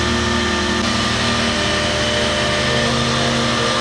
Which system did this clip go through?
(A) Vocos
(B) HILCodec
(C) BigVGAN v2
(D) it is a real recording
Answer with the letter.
D